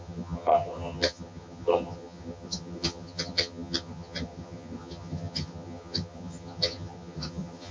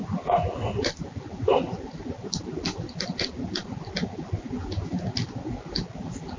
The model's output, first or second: first